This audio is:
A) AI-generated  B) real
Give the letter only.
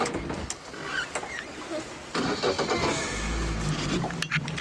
B